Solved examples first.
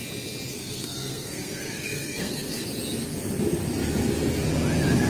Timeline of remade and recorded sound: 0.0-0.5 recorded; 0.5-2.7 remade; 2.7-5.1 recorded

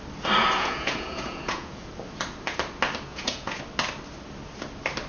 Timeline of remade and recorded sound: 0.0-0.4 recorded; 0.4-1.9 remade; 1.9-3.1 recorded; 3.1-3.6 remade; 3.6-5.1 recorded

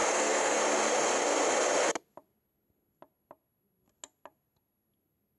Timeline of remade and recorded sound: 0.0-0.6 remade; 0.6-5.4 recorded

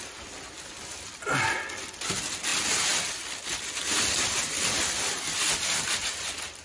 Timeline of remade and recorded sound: 0.0-6.6 recorded

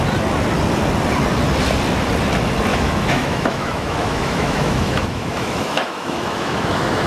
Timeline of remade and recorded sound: 0.0-2.7 recorded; 2.7-7.1 remade

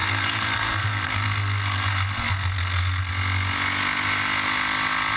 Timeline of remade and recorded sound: 0.0-3.1 remade; 3.1-5.2 recorded